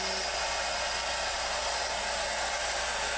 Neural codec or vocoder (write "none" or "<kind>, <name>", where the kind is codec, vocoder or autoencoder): none